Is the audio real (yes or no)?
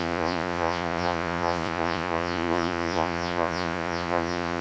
no